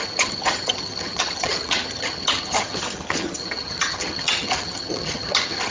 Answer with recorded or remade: remade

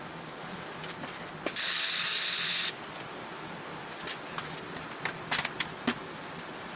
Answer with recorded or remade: recorded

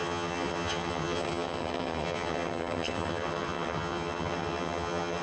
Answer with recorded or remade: remade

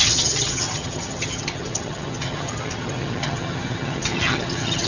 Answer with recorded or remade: remade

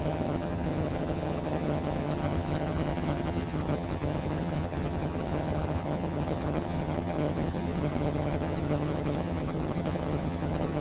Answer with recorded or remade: remade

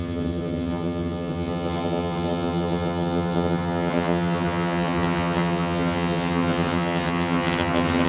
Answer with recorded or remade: remade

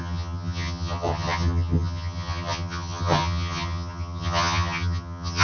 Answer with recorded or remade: remade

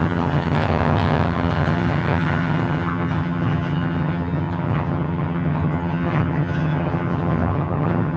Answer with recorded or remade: remade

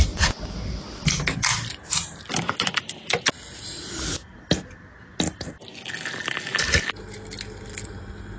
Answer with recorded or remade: recorded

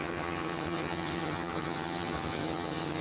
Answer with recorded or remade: remade